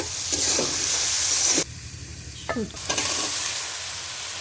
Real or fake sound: real